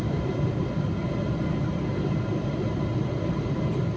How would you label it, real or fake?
real